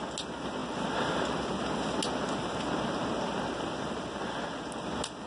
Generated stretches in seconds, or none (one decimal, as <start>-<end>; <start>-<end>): none